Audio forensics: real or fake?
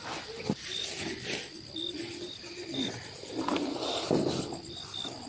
real